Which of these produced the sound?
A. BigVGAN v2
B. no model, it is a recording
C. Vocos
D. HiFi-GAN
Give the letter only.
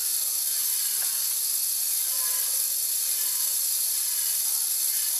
B